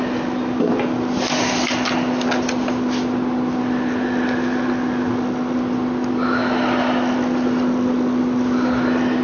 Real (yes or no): yes